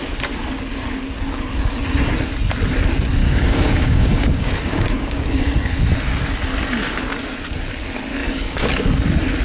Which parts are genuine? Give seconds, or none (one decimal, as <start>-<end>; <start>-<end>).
0.0-3.2; 5.7-8.2; 8.7-9.4